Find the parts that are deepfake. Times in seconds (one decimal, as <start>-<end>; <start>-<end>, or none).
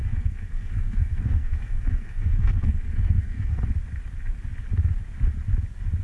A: 0.0-3.6